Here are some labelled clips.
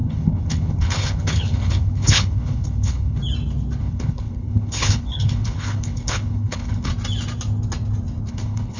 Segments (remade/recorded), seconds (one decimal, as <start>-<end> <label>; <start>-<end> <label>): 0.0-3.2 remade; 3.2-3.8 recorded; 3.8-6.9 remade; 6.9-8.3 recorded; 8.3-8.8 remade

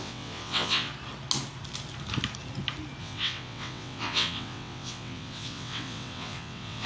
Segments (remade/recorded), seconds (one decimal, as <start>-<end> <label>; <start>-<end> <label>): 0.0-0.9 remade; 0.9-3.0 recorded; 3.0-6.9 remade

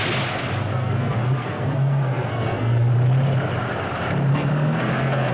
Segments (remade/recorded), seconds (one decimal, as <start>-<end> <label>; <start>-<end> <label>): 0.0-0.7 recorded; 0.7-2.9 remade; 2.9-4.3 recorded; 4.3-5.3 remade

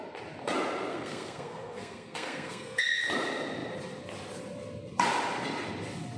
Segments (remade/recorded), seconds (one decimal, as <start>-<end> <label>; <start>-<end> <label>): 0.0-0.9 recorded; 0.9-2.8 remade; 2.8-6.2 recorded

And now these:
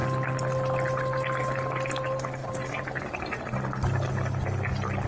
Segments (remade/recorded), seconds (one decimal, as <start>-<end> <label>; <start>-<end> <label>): 0.0-2.4 recorded; 2.4-3.4 remade; 3.4-5.1 recorded